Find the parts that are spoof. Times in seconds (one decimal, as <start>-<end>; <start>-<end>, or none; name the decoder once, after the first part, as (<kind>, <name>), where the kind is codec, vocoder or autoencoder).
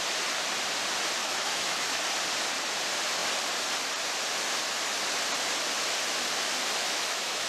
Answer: 1.2-2.0 (autoencoder, DAC-VAE); 6.8-7.5